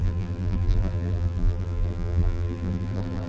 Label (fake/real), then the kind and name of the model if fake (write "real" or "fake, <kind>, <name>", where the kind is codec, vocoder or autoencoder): fake, vocoder, BigVGAN v2